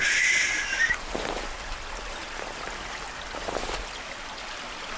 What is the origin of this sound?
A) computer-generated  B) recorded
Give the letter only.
B